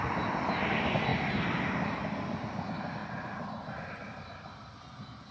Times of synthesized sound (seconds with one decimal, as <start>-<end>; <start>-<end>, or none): none